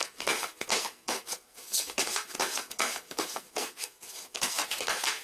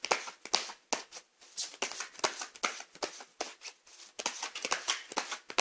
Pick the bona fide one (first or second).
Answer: second